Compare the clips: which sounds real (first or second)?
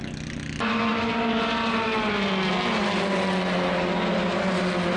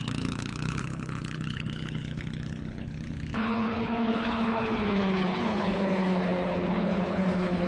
first